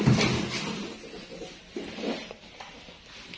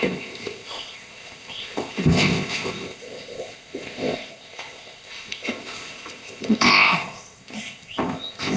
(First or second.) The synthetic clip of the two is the second